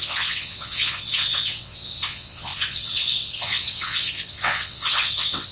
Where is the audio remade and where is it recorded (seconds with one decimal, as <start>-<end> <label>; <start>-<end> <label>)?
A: 0.0-5.5 remade